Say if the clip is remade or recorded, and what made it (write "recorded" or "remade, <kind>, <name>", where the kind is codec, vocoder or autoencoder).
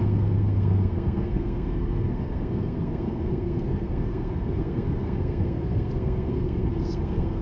remade, codec, SNAC